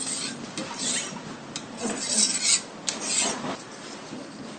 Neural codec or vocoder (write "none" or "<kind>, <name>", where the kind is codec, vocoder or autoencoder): none